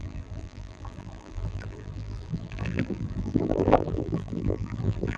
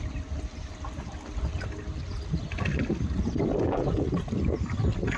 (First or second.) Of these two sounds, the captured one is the second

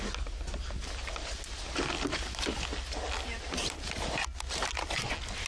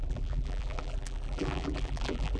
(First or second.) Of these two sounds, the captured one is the first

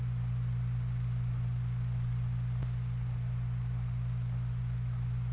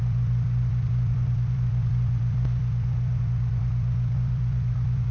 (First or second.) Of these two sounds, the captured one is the first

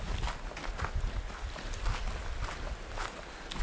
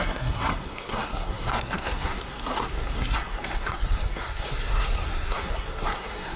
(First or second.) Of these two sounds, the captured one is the first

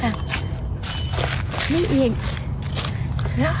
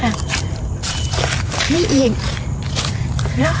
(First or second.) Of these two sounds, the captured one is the first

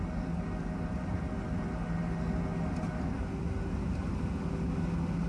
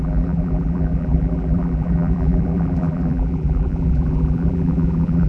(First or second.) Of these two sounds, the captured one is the first